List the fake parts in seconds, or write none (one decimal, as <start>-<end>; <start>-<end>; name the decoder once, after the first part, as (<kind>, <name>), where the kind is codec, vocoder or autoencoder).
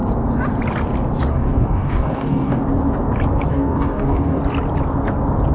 1.3-2.6 (codec, DAC); 3.5-4.4